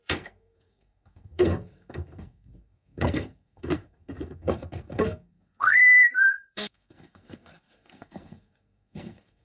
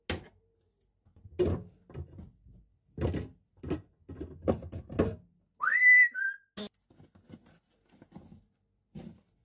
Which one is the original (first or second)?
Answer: second